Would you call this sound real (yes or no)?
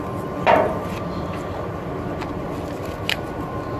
yes